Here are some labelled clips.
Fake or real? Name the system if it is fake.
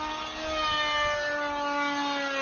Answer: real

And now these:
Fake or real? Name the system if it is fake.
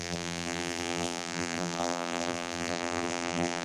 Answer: fake, vocoder, BigVGAN v2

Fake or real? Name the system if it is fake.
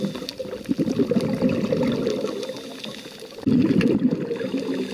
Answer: real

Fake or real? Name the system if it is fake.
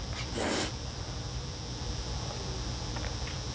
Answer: fake, vocoder, BigVGAN v2